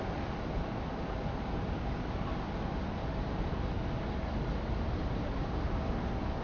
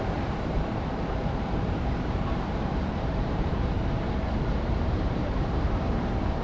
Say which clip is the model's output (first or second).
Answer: second